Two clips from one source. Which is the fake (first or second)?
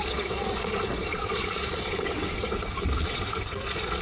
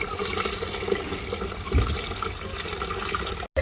first